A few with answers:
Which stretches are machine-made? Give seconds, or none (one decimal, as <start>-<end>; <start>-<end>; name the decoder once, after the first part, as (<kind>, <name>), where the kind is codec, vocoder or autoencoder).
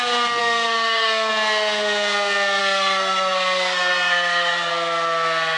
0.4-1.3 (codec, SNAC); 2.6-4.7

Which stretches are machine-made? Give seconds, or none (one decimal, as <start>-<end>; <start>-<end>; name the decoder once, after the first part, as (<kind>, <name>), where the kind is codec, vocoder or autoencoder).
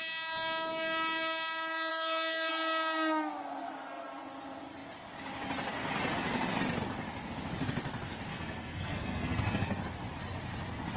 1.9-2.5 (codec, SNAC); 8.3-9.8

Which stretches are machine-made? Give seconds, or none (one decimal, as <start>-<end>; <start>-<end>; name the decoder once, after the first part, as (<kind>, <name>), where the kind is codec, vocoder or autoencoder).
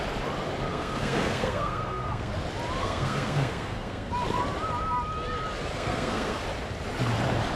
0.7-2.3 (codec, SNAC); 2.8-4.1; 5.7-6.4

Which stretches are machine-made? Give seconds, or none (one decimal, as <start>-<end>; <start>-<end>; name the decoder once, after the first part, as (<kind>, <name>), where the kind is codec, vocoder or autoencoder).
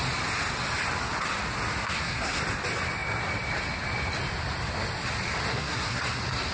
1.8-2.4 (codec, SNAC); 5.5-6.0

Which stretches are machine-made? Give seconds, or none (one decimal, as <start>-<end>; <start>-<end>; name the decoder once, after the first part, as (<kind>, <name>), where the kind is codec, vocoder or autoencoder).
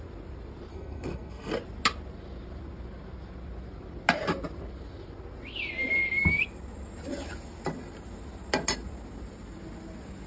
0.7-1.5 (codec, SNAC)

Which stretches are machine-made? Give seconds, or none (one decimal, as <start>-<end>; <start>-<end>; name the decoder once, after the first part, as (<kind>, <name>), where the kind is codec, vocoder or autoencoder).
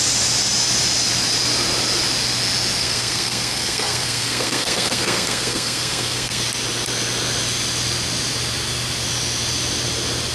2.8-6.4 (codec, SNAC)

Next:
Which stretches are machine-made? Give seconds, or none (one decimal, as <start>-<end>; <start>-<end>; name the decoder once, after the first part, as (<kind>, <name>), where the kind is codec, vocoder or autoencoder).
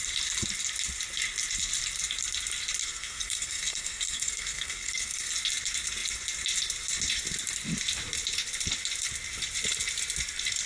2.8-5.3 (codec, SNAC)